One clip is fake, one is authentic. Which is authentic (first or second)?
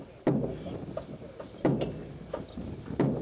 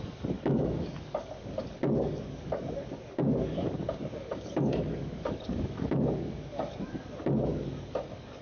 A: first